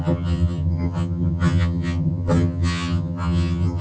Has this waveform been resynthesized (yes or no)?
yes